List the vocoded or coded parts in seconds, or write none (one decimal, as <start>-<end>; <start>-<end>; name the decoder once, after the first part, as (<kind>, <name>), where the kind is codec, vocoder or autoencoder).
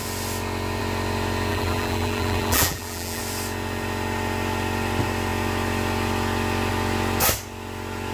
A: 1.5-3.2 (vocoder, BigVGAN v2)